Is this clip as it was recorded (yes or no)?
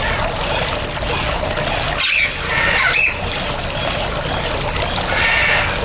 yes